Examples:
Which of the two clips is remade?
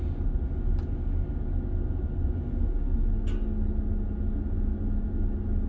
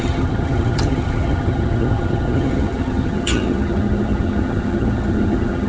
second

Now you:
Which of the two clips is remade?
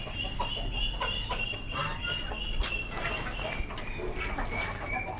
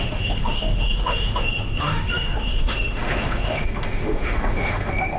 second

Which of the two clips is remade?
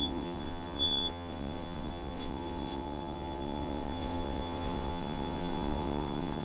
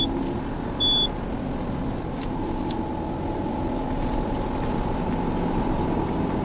first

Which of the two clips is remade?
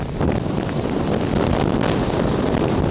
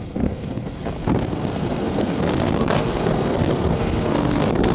second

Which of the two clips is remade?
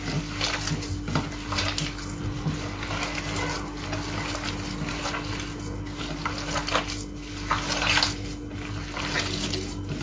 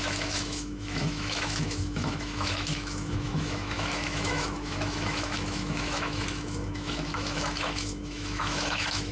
second